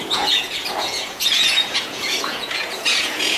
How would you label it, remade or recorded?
remade